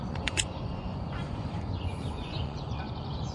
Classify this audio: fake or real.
fake